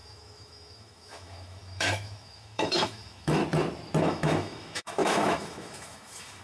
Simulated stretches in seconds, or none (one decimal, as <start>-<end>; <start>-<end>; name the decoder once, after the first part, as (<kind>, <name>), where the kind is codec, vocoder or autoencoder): 0.0-3.4 (autoencoder, DAC-VAE); 4.0-6.4